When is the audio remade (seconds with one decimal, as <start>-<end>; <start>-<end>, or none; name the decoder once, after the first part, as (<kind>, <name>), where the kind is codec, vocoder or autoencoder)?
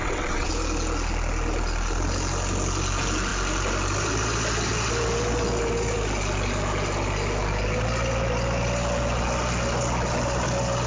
0.0-0.5 (vocoder, WaveNeXt)